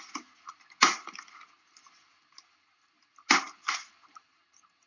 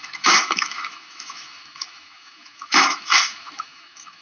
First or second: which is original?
first